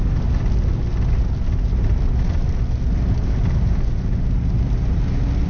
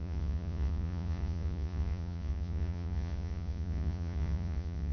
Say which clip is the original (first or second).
first